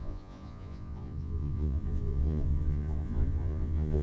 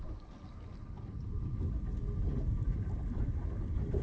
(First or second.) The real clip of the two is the second